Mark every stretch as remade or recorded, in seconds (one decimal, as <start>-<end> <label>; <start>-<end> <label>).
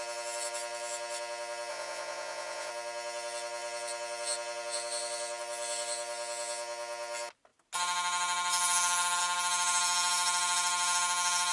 0.0-1.7 recorded; 1.7-2.7 remade; 2.7-11.5 recorded